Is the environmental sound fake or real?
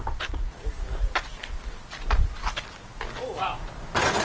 real